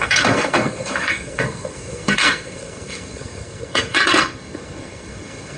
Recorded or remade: remade